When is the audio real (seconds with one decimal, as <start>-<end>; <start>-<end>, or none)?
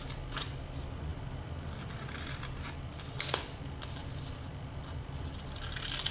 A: 0.0-4.0; 5.6-6.1